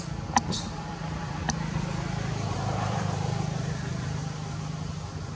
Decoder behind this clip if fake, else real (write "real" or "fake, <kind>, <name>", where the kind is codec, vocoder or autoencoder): fake, vocoder, BigVGAN v2